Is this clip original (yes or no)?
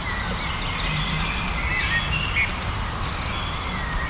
yes